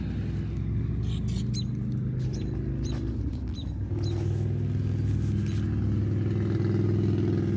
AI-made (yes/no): no